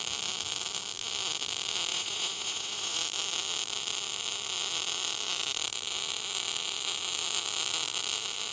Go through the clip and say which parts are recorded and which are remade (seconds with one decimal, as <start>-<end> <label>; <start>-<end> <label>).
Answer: 0.0-1.9 recorded; 1.9-3.0 remade; 3.0-8.5 recorded